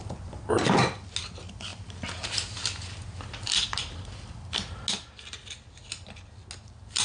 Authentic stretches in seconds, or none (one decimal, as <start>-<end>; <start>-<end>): 0.0-7.0